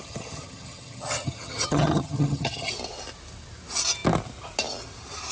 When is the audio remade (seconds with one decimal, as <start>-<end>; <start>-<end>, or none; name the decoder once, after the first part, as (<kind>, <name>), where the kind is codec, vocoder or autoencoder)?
0.0-2.7 (vocoder, HiFi-GAN)